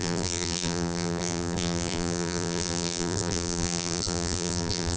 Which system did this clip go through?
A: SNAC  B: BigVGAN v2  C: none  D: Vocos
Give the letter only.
B